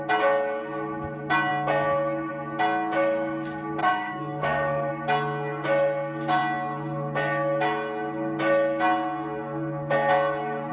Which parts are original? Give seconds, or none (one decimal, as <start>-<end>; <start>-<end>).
0.0-3.8; 4.9-10.7